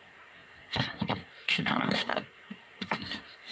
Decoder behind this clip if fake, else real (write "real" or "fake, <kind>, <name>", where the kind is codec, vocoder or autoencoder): fake, codec, SNAC